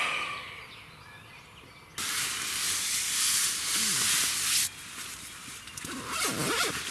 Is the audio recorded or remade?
recorded